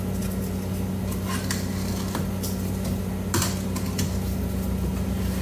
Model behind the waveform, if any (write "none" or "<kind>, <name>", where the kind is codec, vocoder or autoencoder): none